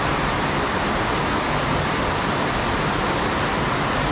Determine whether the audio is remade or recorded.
recorded